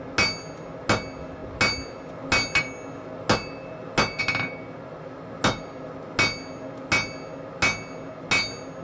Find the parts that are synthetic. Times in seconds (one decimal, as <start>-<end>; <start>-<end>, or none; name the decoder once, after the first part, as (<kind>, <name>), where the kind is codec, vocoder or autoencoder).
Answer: none